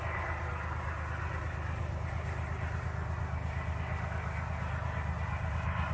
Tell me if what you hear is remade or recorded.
recorded